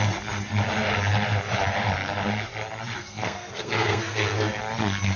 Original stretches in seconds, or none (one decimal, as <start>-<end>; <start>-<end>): 0.0-3.0; 4.6-5.2